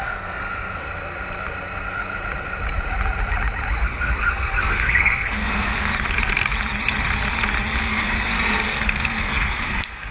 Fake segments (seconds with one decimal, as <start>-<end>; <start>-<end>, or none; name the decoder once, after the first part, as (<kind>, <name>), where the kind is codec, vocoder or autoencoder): 0.0-0.8 (codec, SNAC); 3.8-5.9; 7.8-10.1